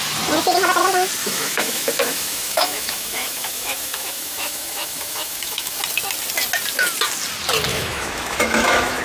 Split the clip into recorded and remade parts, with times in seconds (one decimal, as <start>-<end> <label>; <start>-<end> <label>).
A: 0.0-1.2 recorded; 1.2-5.8 remade; 5.8-7.7 recorded; 7.7-9.0 remade